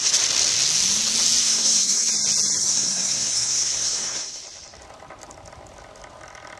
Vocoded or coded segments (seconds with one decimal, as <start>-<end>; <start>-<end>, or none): 1.4-2.1; 2.6-4.4